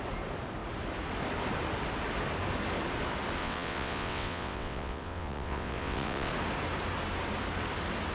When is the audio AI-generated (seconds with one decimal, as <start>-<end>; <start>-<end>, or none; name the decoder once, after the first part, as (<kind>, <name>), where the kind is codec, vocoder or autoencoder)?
3.4-6.3 (vocoder, WaveNeXt)